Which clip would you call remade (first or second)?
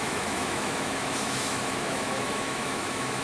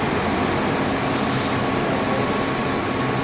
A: first